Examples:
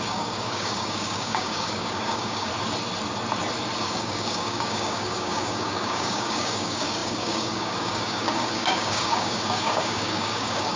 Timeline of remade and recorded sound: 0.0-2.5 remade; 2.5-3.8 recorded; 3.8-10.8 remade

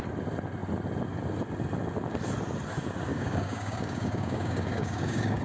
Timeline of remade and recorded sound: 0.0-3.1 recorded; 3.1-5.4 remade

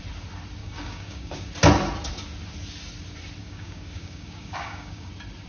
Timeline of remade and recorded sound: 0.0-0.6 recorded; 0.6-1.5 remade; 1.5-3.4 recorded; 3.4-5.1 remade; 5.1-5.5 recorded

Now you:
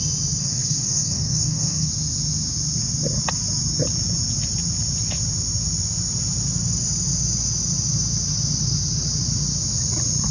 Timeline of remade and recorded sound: 0.0-0.4 recorded; 0.4-1.9 remade; 1.9-10.3 recorded

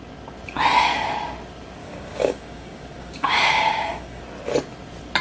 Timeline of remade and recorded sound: 0.0-1.8 recorded; 1.8-4.2 remade; 4.2-5.2 recorded

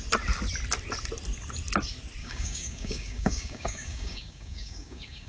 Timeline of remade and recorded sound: 0.0-2.2 recorded; 2.2-5.3 remade